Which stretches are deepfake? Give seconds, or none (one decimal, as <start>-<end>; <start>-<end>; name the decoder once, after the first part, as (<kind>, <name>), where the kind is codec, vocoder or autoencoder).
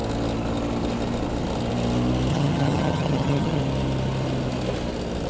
2.3-3.6 (vocoder, HiFi-GAN)